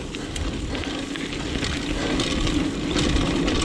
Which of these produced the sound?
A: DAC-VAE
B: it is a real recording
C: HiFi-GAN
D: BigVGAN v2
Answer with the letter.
B